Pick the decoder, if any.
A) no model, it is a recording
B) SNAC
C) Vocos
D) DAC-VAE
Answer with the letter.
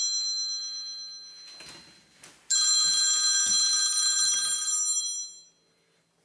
A